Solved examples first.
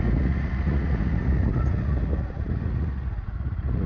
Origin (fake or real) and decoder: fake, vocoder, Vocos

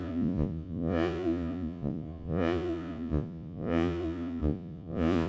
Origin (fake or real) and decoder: fake, vocoder, Vocos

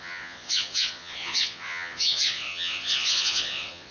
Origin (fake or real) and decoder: fake, vocoder, Vocos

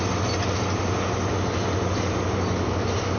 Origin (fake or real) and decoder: real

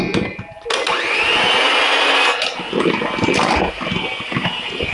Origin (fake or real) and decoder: real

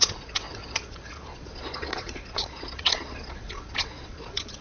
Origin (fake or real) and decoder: fake, vocoder, Vocos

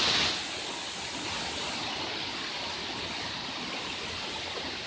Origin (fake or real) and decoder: real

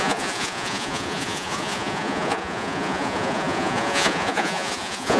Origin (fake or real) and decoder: fake, vocoder, Vocos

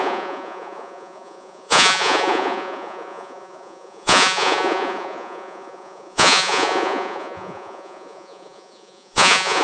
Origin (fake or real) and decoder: fake, vocoder, Vocos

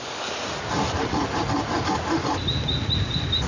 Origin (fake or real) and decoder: real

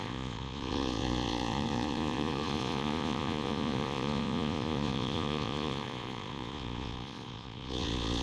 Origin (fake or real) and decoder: fake, vocoder, Vocos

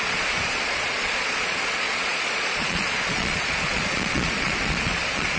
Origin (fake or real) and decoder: fake, vocoder, Vocos